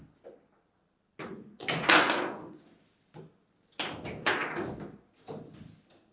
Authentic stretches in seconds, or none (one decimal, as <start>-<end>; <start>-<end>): 0.0-1.3; 2.6-6.1